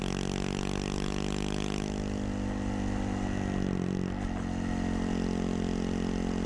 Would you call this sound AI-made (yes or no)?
no